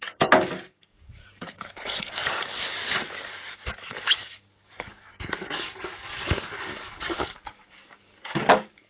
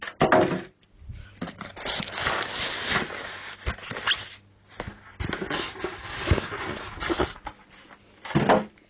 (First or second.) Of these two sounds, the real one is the second